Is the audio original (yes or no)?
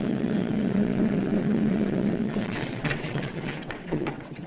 no